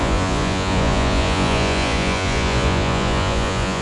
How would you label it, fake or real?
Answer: fake